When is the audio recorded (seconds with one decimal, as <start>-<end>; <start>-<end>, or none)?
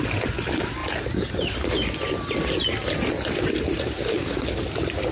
0.0-5.1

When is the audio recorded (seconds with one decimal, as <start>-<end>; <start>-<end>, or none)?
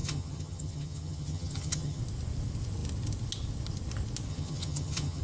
2.0-4.3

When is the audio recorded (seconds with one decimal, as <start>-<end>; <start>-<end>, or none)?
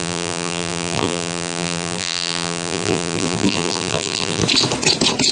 4.4-5.3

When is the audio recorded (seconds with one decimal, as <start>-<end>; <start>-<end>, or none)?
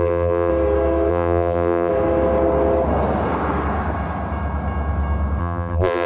0.5-1.1; 1.9-5.4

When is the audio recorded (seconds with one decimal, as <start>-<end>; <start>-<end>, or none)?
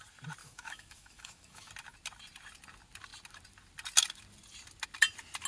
0.0-0.4; 1.7-5.5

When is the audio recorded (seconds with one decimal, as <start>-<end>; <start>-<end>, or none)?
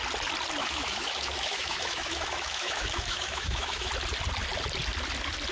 0.0-0.6; 3.9-5.5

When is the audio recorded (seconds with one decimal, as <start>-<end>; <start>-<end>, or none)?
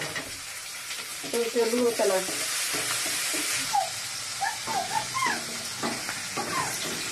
4.6-6.5